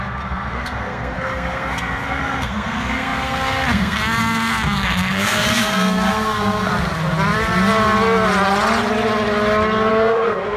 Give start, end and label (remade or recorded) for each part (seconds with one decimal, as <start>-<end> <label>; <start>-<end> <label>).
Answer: 0.0-6.7 remade; 6.7-9.9 recorded; 9.9-10.6 remade